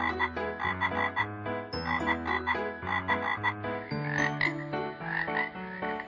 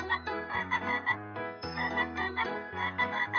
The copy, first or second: second